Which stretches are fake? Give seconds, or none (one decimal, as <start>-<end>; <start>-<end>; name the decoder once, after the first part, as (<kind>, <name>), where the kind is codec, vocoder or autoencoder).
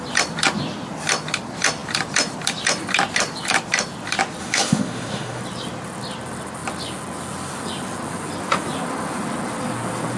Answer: 4.4-5.4 (autoencoder, DAC-VAE)